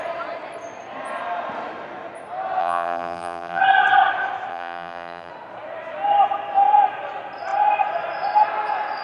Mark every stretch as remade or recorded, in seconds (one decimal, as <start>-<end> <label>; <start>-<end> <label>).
0.0-2.6 recorded; 2.6-3.6 remade; 3.6-4.5 recorded; 4.5-5.3 remade; 5.3-9.0 recorded